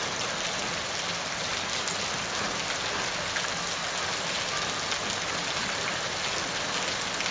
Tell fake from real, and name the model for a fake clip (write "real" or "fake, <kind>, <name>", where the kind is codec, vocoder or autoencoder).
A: real